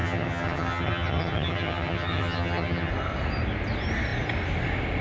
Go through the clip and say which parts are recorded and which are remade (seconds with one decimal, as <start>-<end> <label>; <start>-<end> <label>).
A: 0.0-2.9 remade; 2.9-5.0 recorded